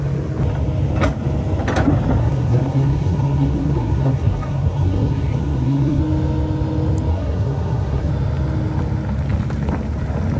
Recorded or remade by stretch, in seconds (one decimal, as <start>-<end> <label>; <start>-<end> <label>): 0.0-2.2 recorded; 2.2-6.0 remade; 6.0-7.1 recorded; 7.1-8.1 remade; 8.1-10.4 recorded